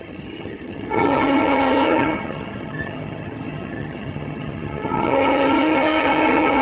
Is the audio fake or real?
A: fake